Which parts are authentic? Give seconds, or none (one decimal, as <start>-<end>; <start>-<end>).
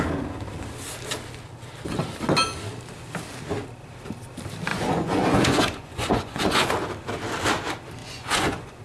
0.0-4.7; 6.7-8.0